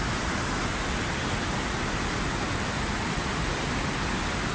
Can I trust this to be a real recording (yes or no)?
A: yes